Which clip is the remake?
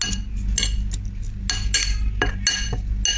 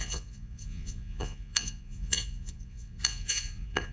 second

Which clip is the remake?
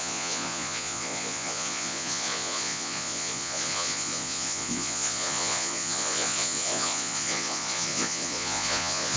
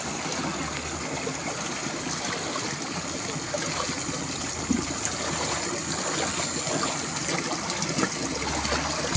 first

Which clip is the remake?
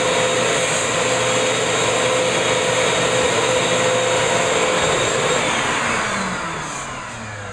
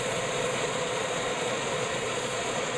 second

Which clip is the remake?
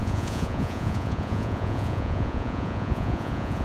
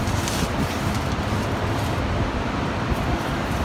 first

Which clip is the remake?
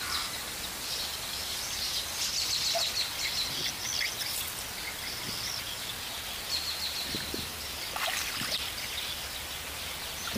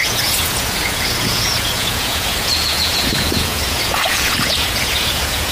second